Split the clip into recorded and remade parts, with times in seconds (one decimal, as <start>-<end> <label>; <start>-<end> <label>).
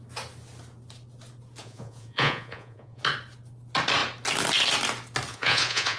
0.0-1.6 recorded; 1.6-3.0 remade; 3.0-5.3 recorded; 5.3-6.0 remade